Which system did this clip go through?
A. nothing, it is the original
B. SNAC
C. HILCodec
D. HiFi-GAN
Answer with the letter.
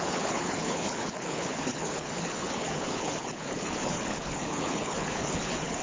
C